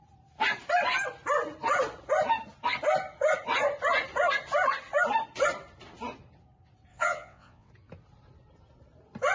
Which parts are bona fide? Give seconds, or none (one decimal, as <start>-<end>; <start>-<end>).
0.0-6.9; 7.7-9.3